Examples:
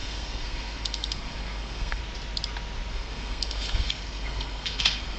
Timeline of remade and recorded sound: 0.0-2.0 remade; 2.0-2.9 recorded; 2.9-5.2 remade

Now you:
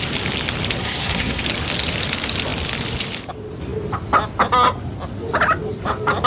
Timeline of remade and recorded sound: 0.0-0.8 recorded; 0.8-1.4 remade; 1.4-6.3 recorded

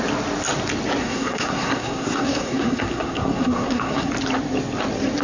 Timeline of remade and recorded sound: 0.0-1.0 recorded; 1.0-4.1 remade; 4.1-5.2 recorded

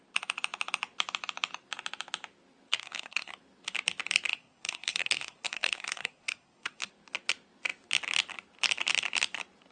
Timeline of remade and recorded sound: 0.0-2.7 recorded; 2.7-3.3 remade; 3.3-4.3 recorded; 4.3-6.9 remade; 6.9-9.7 recorded

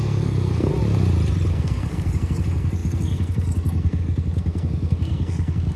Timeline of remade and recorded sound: 0.0-0.7 remade; 0.7-1.5 recorded; 1.5-5.8 remade

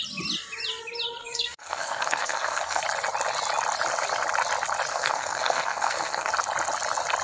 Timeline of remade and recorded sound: 0.0-1.2 recorded; 1.2-2.8 remade; 2.8-4.9 recorded; 4.9-6.3 remade; 6.3-7.2 recorded

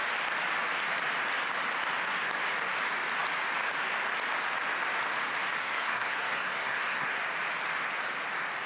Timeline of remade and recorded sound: 0.0-5.6 recorded; 5.6-7.2 remade; 7.2-8.7 recorded